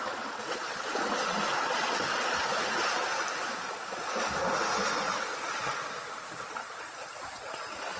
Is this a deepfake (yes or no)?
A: no